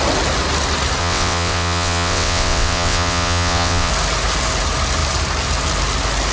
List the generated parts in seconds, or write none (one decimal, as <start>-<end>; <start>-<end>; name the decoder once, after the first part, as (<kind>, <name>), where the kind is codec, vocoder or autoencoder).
1.0-3.9 (vocoder, WaveNeXt)